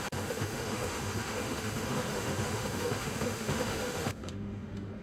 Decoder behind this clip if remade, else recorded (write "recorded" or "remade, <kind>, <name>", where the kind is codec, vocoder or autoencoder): remade, autoencoder, DAC-VAE